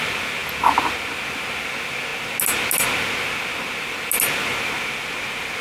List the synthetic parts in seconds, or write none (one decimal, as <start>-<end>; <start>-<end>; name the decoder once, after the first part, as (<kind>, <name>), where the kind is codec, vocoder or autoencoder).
none